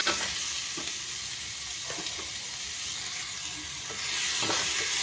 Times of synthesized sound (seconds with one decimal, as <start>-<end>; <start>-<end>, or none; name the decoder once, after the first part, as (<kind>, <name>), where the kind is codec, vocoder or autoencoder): 0.0-1.2 (vocoder, BigVGAN v2); 1.7-3.3